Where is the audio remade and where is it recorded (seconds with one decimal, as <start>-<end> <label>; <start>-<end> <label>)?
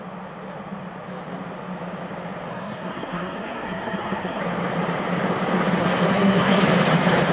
0.0-2.5 recorded; 2.5-4.4 remade; 4.4-5.8 recorded; 5.8-6.6 remade; 6.6-7.3 recorded